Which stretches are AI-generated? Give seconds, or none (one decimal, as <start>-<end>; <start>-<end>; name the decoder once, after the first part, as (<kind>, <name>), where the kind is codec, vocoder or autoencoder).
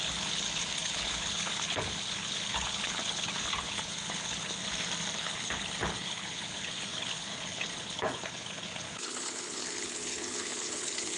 0.0-4.6 (codec, HILCodec); 5.2-11.2